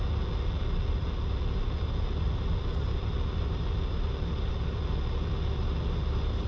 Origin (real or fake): real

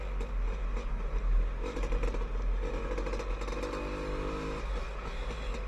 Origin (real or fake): real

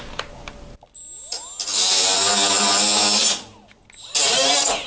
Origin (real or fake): real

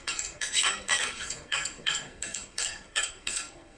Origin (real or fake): fake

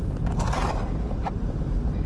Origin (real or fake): real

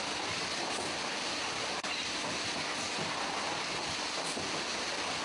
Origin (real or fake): real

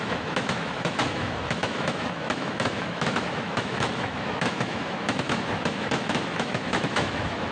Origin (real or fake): fake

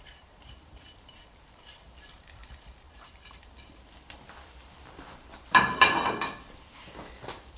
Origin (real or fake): fake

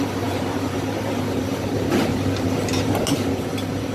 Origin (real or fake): fake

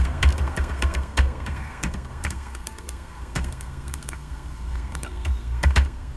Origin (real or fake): fake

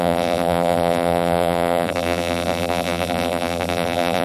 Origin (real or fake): fake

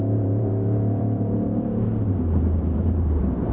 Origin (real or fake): fake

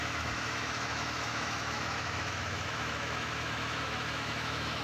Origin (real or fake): fake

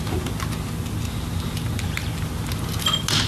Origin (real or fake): real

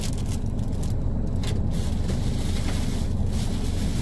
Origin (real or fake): real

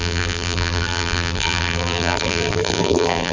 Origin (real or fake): fake